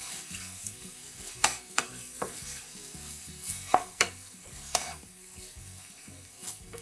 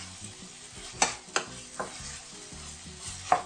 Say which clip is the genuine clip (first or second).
second